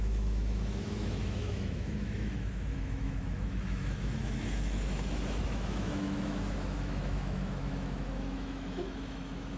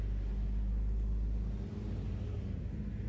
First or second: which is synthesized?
first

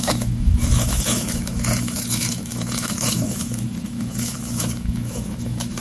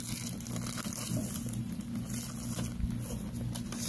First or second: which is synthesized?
first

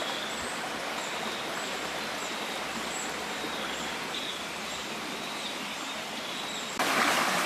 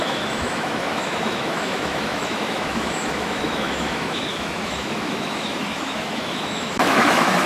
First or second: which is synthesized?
second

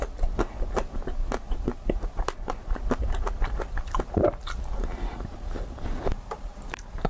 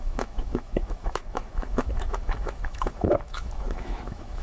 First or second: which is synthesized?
second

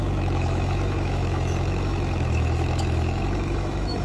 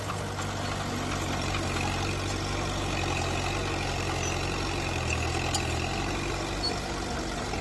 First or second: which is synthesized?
first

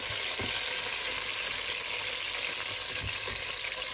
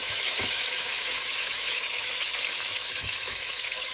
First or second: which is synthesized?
second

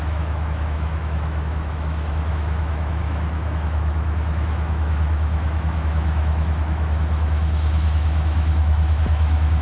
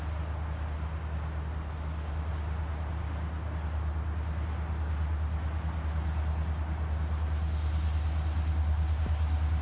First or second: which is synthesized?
first